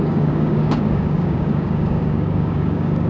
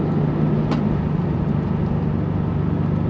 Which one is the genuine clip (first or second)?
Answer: second